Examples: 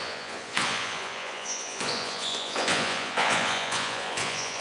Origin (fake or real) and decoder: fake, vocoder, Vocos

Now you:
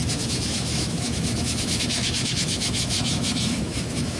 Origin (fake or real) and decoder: fake, autoencoder, DAC-VAE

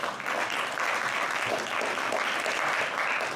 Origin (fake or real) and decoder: real